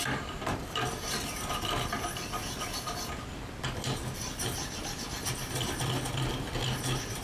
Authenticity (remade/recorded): recorded